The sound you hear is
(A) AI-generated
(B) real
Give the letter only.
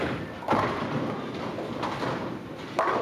B